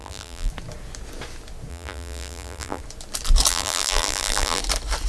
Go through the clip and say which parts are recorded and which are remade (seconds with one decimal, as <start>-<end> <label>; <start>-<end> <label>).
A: 0.0-0.5 remade; 0.5-1.7 recorded; 1.7-2.8 remade; 2.8-3.5 recorded; 3.5-4.6 remade; 4.6-5.1 recorded